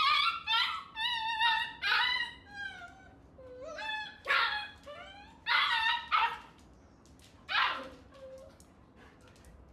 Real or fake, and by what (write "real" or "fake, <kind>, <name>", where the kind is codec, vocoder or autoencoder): real